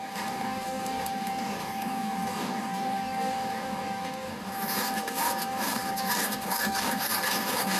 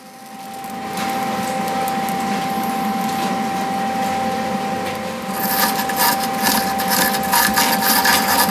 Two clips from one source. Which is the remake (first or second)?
first